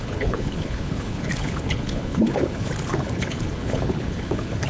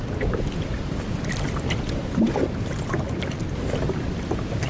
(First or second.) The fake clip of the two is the first